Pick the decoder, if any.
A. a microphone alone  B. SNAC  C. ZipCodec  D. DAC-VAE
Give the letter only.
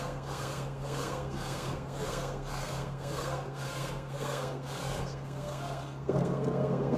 B